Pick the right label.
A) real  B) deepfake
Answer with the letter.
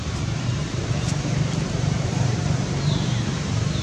B